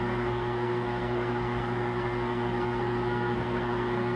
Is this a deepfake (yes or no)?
yes